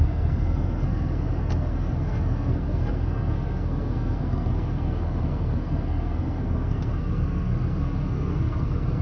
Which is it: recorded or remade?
remade